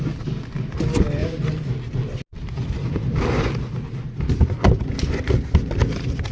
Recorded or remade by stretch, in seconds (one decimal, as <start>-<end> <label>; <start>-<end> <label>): 0.0-6.3 recorded